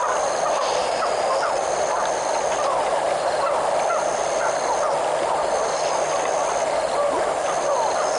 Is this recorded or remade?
recorded